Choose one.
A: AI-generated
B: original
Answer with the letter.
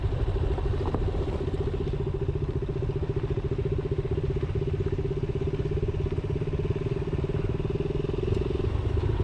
B